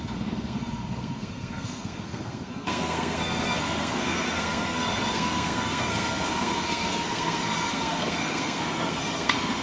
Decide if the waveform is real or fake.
fake